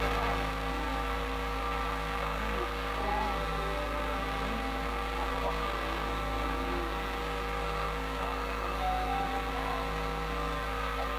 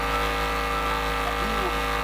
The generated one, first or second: first